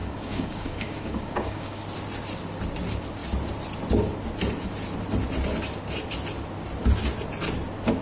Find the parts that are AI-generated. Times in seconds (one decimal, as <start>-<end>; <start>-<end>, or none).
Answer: 0.0-1.8